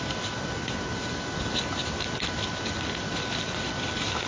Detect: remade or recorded recorded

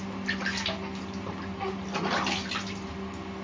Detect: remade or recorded recorded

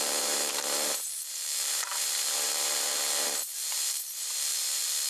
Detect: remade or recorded remade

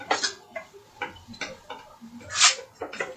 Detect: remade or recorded remade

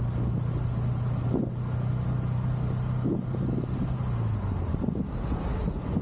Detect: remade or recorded recorded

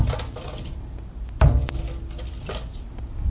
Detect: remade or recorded recorded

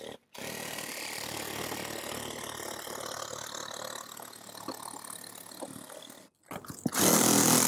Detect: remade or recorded recorded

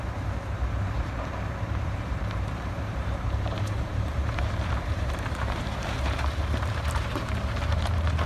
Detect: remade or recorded remade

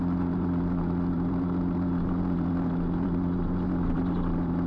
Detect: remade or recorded remade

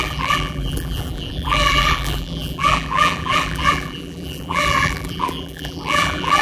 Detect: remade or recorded remade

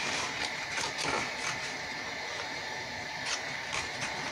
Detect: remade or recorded remade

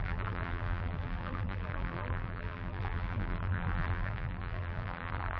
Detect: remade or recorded remade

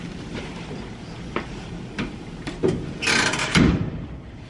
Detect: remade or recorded remade